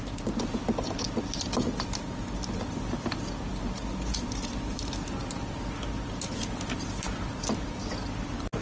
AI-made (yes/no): no